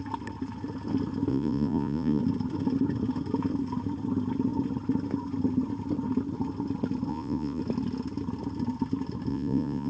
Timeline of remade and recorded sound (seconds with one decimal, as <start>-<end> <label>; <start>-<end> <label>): 0.0-1.3 recorded; 1.3-2.2 remade; 2.2-7.1 recorded; 7.1-7.6 remade; 7.6-9.3 recorded; 9.3-9.9 remade